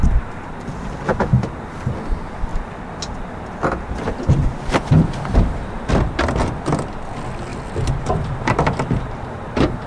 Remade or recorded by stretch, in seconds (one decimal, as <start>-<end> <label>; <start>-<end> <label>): 0.0-9.9 remade